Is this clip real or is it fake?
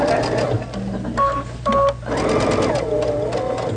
real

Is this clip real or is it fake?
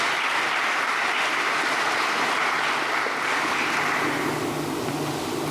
real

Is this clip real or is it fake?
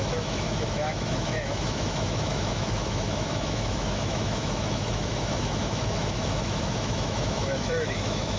fake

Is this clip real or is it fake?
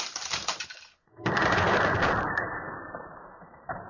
fake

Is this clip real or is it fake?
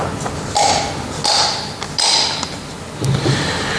real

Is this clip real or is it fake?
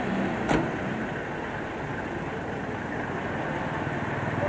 real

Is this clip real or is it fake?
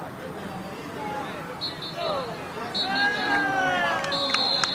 real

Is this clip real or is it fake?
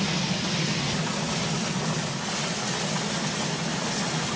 real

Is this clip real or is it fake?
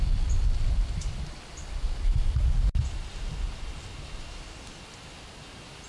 real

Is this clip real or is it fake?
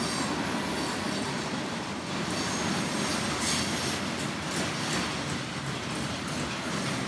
real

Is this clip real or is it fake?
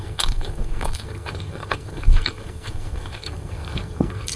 fake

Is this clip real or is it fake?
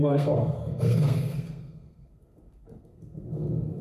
fake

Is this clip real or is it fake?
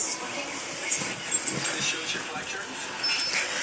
real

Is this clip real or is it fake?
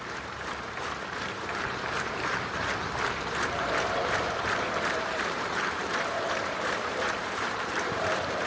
fake